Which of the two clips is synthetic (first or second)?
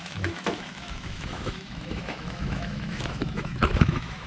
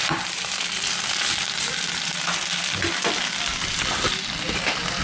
first